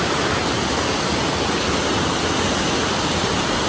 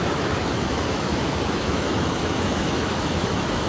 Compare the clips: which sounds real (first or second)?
first